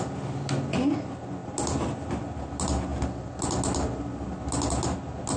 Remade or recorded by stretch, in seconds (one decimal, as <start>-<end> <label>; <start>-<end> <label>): 0.0-5.4 recorded